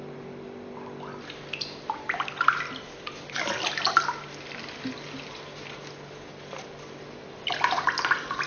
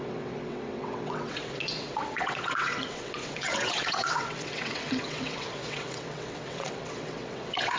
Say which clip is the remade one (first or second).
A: second